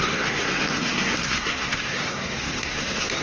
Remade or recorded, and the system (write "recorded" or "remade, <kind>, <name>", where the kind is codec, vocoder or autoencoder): remade, codec, SNAC